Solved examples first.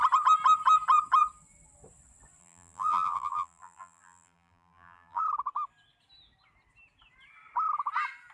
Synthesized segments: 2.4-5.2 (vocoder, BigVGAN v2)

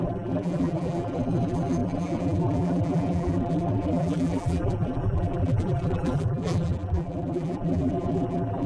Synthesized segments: 0.0-8.7 (vocoder, BigVGAN v2)

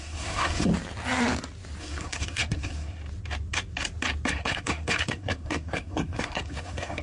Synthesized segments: 0.0-0.7 (codec, SNAC); 1.8-3.0; 4.3-7.0

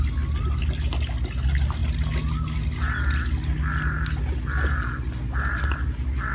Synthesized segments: none

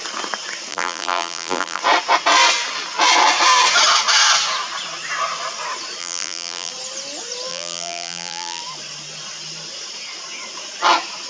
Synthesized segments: 0.7-1.8 (vocoder, BigVGAN v2); 6.0-6.7; 7.5-8.6

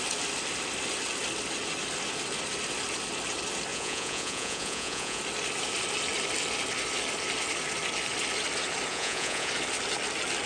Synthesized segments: 3.7-5.2 (vocoder, Vocos); 8.9-9.5

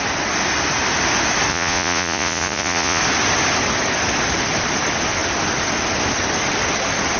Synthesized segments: 1.5-3.0 (vocoder, Vocos)